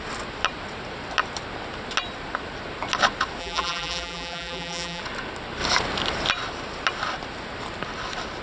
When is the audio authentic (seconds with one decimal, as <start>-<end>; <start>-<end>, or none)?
0.0-3.4; 5.0-8.4